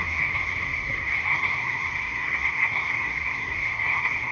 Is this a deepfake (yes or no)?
yes